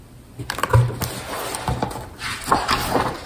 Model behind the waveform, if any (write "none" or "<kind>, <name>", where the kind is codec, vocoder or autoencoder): none